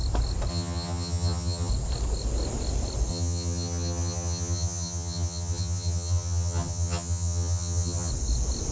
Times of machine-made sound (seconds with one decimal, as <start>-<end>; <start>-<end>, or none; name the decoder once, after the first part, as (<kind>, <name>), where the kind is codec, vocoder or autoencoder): 0.5-1.7 (vocoder, HiFi-GAN); 3.1-8.1